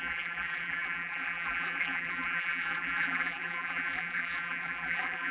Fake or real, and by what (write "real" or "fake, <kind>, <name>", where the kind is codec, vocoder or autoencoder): fake, vocoder, BigVGAN v2